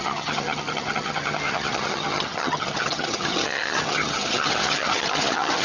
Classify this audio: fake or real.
fake